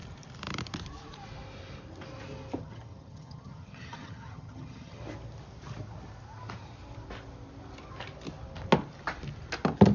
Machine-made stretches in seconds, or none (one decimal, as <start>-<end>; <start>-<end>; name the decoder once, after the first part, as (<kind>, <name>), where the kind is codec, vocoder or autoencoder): 2.6-5.0 (vocoder, HiFi-GAN)